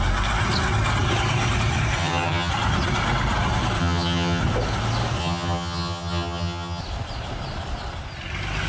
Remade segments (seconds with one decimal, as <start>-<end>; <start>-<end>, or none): 2.0-2.5; 3.8-4.4; 5.2-6.8

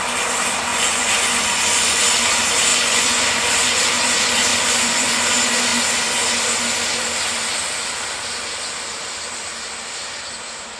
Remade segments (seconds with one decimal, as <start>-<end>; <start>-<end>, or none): 0.7-2.0; 2.7-3.8; 4.5-5.2

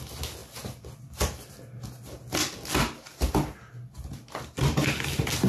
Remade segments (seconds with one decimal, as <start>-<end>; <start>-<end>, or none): none